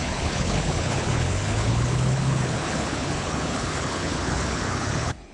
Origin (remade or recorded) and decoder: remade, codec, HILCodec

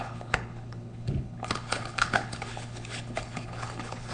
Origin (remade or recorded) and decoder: remade, codec, HILCodec